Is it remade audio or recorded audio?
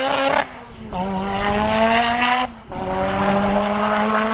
recorded